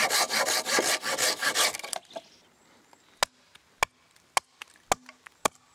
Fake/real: real